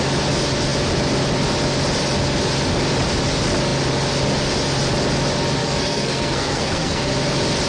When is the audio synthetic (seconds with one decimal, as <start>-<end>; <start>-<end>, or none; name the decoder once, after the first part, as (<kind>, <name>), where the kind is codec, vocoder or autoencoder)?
5.6-7.1 (codec, SNAC)